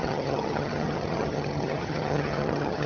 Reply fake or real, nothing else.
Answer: fake